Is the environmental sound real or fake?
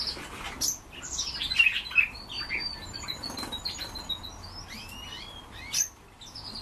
real